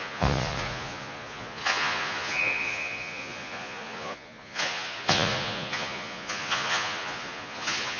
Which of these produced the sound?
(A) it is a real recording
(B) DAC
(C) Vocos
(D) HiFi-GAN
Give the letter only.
C